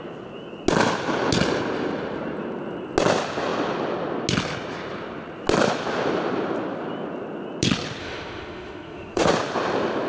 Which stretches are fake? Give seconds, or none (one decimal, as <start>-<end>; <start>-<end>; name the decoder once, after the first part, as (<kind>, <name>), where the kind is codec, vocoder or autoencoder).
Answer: 8.0-9.3 (autoencoder, DAC-VAE)